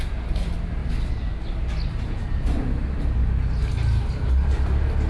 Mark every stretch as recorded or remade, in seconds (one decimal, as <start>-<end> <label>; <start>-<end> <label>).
0.0-5.1 recorded